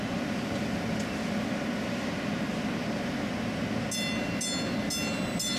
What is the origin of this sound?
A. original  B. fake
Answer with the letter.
A